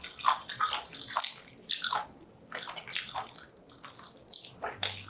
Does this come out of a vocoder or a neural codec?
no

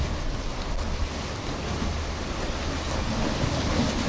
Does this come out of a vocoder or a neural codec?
no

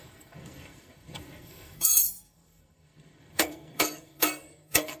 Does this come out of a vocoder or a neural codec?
yes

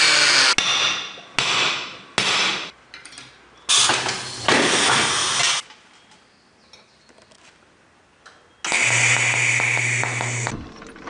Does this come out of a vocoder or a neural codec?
no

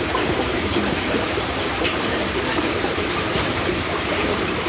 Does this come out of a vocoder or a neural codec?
yes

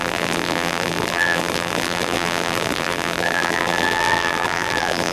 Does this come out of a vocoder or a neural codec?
yes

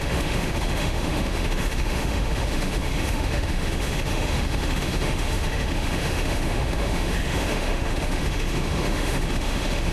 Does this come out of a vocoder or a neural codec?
yes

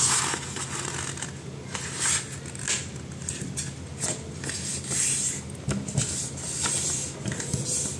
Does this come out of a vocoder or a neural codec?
no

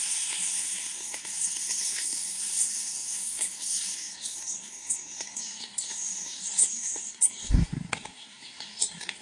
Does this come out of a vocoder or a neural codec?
yes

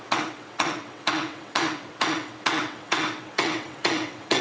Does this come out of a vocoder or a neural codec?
yes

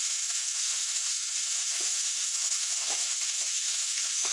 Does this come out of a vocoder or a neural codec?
yes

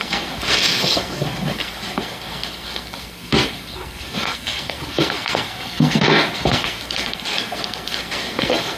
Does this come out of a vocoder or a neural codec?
yes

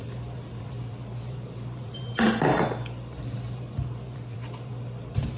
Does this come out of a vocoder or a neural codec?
yes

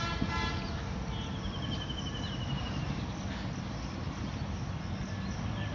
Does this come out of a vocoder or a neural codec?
no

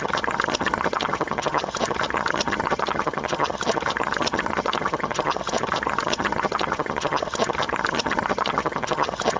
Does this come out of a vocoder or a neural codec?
yes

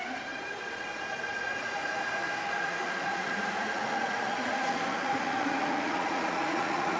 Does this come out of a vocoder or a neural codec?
yes